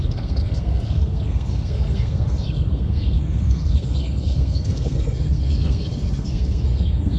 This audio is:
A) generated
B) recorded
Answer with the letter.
A